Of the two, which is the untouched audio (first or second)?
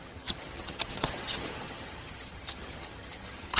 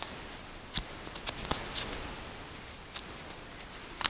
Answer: second